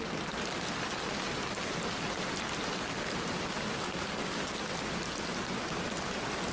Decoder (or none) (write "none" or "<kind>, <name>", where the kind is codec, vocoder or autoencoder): none